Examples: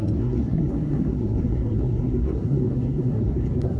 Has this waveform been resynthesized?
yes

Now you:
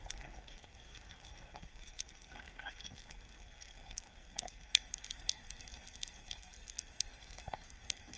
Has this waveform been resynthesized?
yes